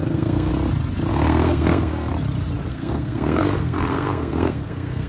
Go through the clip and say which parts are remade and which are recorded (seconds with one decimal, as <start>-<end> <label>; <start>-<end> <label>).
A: 0.0-0.5 remade; 0.5-1.1 recorded; 1.1-2.1 remade; 2.1-2.7 recorded; 2.7-5.1 remade